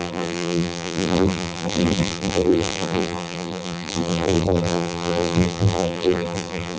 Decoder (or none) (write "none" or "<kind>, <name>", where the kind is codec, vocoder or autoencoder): vocoder, BigVGAN v2